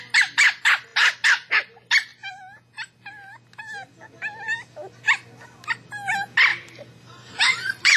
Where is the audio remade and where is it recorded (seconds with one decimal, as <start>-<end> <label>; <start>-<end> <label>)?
0.0-6.5 recorded; 6.5-8.0 remade